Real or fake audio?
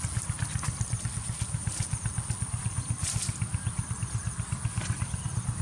real